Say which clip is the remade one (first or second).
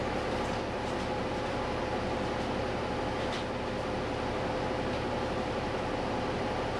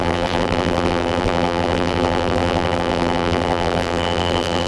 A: second